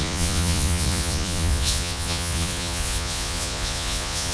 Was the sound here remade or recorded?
remade